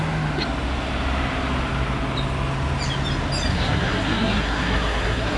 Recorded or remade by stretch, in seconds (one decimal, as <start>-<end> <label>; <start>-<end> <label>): 0.0-3.5 recorded; 3.5-5.4 remade

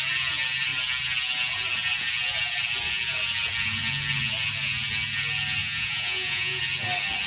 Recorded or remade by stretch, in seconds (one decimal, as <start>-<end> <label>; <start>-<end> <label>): 0.0-5.6 recorded; 5.6-6.6 remade; 6.6-7.3 recorded

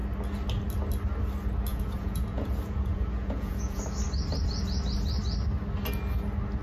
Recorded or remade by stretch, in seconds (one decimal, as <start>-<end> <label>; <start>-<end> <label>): 0.0-1.7 recorded; 1.7-3.8 remade; 3.8-6.6 recorded